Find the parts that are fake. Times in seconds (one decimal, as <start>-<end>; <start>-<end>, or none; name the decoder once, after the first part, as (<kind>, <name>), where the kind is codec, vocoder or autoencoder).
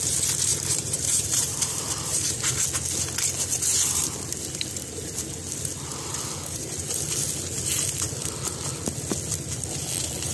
0.5-2.5 (vocoder, BigVGAN v2)